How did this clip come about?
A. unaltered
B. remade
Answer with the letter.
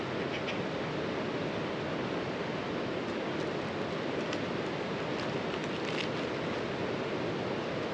A